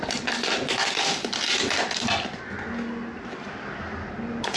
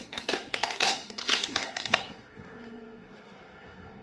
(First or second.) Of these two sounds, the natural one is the first